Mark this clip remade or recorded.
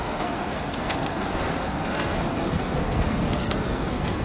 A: remade